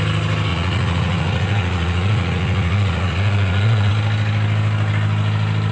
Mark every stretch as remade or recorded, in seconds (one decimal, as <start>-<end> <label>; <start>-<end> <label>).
0.0-0.5 recorded; 0.5-3.9 remade; 3.9-5.7 recorded